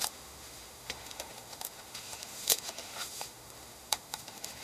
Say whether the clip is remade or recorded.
remade